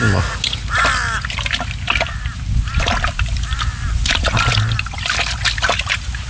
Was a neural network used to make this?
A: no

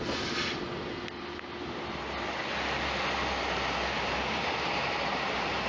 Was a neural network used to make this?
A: no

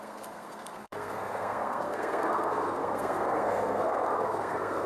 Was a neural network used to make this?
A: yes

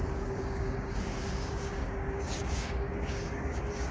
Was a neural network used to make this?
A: yes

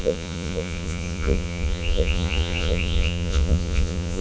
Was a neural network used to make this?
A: yes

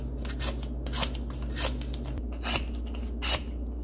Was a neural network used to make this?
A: no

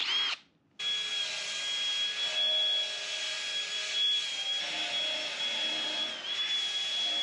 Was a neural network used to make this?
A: no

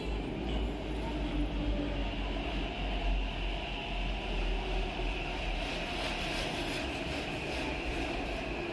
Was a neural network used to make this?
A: no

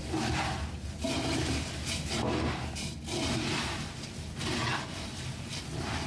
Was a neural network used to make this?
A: no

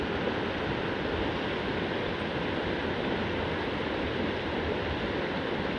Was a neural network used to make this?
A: no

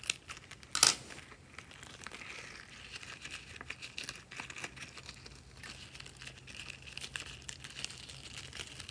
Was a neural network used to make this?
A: no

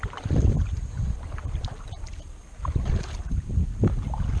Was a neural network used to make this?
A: no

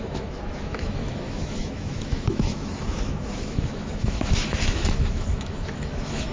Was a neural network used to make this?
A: yes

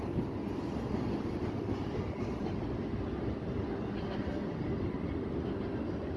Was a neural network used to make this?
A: no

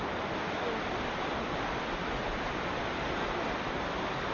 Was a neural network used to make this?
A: no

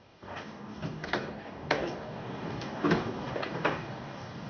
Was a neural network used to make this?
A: yes